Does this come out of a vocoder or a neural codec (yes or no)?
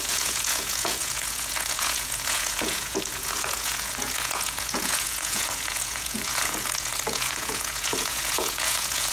yes